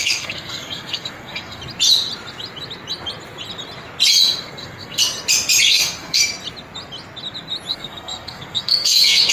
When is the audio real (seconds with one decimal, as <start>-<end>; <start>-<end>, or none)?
1.6-4.4; 5.0-5.7; 6.2-7.7